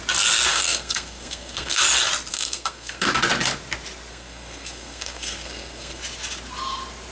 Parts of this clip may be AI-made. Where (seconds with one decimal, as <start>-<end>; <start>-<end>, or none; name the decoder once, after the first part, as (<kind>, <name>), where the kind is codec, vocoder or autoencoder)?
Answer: 0.5-1.8 (codec, SNAC); 2.3-3.1; 4.1-6.0